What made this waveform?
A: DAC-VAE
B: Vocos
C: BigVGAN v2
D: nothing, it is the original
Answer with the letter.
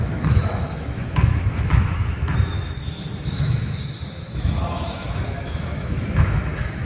A